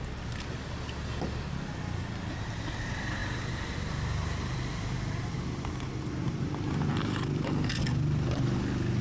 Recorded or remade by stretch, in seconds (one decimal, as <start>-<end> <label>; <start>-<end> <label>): 0.0-3.2 recorded; 3.2-5.8 remade; 5.8-6.2 recorded; 6.2-7.8 remade; 7.8-9.0 recorded